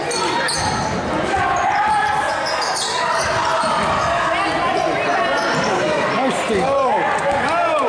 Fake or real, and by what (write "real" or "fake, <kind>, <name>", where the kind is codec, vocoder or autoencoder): real